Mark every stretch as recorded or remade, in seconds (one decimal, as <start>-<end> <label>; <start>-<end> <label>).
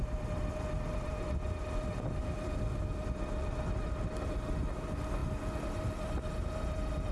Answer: 0.0-7.1 recorded